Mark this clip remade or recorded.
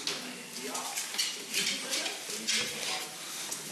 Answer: recorded